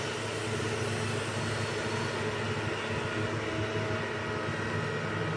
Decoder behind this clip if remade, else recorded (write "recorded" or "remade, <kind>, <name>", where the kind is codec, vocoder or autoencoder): recorded